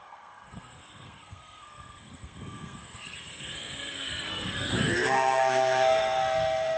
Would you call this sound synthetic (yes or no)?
yes